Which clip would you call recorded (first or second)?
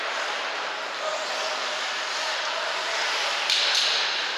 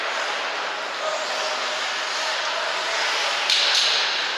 second